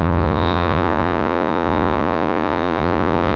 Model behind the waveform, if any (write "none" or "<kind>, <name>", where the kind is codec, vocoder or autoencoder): vocoder, Vocos